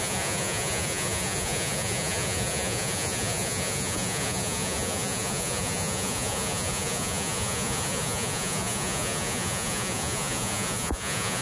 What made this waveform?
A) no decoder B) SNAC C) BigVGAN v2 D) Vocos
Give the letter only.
D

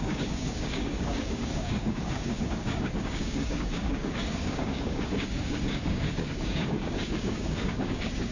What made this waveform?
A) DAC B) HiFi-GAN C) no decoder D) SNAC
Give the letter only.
A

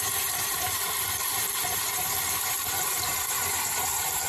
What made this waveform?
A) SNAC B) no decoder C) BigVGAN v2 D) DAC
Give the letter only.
C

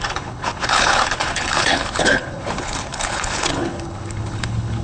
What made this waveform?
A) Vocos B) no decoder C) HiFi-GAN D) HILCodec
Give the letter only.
D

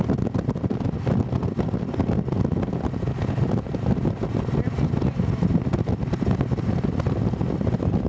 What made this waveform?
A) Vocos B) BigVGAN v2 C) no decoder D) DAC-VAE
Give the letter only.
C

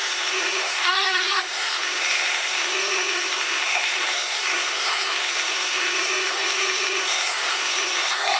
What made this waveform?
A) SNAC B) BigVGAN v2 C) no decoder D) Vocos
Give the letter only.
A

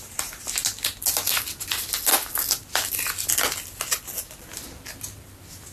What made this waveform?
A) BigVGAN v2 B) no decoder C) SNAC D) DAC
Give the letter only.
B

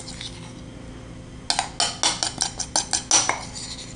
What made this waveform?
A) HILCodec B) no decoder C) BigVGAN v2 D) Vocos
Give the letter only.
B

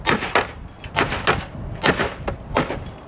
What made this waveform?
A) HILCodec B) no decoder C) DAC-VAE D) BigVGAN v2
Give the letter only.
B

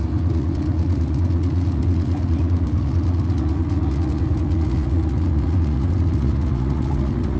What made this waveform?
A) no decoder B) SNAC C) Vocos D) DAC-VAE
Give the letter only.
C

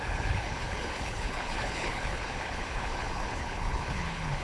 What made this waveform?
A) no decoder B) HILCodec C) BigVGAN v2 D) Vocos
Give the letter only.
B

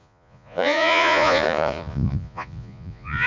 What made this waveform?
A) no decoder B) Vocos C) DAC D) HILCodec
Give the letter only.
B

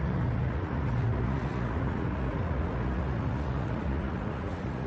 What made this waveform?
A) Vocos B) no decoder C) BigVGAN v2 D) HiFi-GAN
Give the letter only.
A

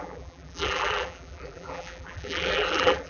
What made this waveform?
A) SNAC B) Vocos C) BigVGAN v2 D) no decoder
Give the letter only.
C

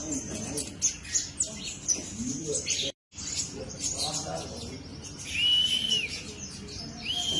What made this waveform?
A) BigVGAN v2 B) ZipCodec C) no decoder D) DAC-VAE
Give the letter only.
C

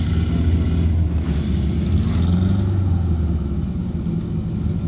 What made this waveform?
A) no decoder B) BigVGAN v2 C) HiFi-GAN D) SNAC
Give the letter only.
A